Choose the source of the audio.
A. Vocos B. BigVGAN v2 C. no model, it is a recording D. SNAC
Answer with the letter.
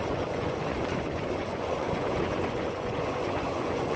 A